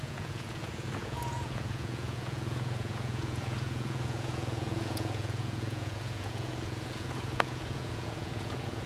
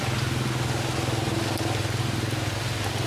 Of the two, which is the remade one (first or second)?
first